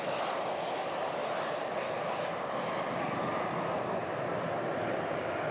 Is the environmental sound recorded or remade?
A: recorded